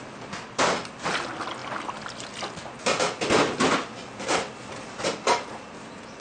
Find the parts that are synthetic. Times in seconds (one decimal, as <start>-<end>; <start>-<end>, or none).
none